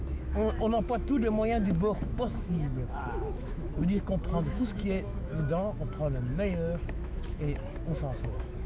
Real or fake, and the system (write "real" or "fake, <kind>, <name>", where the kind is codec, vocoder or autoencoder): fake, autoencoder, DAC-VAE